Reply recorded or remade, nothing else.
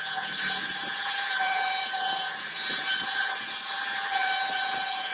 remade